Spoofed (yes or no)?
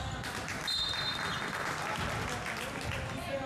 no